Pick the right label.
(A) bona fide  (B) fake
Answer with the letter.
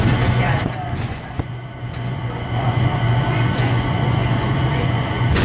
B